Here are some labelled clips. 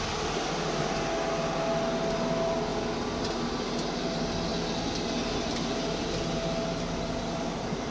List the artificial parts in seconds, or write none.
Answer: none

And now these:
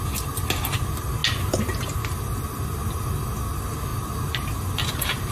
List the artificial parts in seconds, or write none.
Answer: none

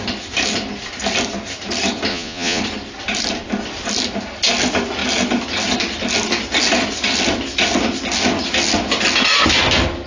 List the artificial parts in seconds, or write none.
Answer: 2.1-2.6 (vocoder, Vocos)